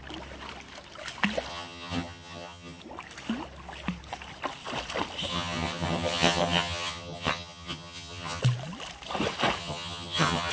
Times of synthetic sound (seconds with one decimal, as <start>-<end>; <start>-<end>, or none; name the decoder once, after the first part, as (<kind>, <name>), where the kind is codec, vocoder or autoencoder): 1.5-2.8 (vocoder, HiFi-GAN); 5.3-8.4; 9.6-10.5